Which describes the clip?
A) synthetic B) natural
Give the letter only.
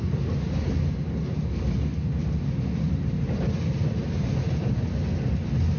B